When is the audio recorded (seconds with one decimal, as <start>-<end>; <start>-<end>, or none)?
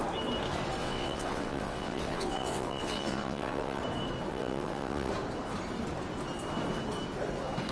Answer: 0.0-0.8; 3.8-4.3; 5.1-7.7